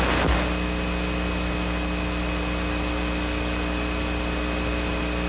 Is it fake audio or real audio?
real